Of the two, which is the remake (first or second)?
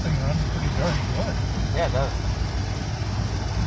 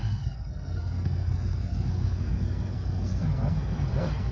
second